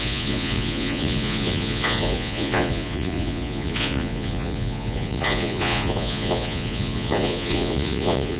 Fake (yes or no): yes